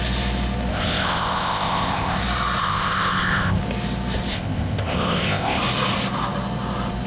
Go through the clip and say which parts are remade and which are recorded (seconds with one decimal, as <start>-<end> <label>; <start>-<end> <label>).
0.0-0.7 recorded; 0.7-2.2 remade; 2.2-2.6 recorded; 2.6-3.6 remade; 3.6-4.3 recorded; 4.3-5.6 remade; 5.6-7.1 recorded